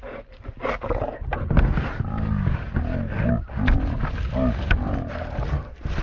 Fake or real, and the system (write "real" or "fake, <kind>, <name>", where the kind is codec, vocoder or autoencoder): real